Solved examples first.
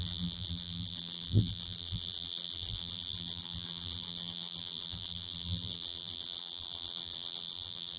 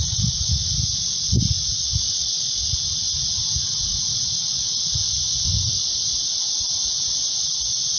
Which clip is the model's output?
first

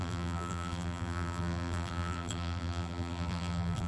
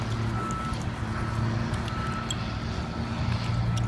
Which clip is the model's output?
first